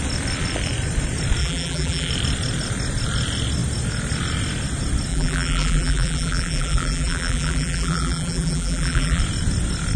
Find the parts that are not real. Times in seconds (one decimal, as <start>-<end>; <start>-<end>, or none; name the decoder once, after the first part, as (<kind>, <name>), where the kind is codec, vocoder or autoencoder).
1.4-2.1 (vocoder, BigVGAN v2); 5.1-9.2